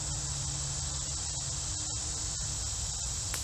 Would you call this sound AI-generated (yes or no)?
no